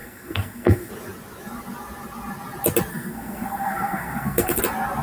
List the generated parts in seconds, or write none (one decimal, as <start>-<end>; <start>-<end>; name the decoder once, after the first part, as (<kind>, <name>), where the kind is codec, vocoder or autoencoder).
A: 0.0-0.9 (codec, SNAC); 2.9-4.6